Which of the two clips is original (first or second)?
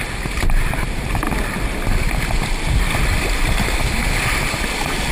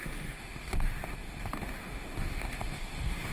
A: first